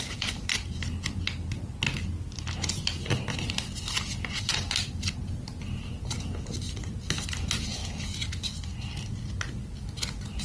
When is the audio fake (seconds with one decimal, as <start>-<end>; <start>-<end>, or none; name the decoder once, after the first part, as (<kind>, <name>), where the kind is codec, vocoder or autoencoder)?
none